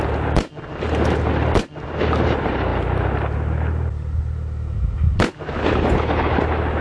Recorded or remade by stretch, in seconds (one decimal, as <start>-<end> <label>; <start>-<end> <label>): 0.0-6.8 recorded